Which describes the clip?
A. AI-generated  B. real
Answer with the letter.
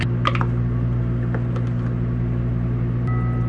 B